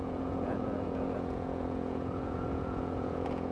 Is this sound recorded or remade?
remade